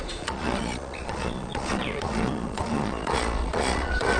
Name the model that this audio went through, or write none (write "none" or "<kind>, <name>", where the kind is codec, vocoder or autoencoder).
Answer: vocoder, Vocos